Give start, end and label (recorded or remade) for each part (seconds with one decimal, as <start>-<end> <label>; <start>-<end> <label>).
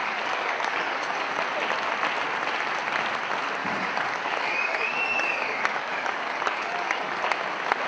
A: 0.0-1.4 remade; 1.4-3.6 recorded; 3.6-7.2 remade; 7.2-7.9 recorded